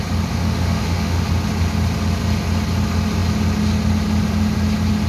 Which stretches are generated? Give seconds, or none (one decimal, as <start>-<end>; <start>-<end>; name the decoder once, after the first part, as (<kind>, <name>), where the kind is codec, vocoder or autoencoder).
0.4-1.3 (autoencoder, DAC-VAE)